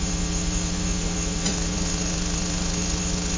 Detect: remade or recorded remade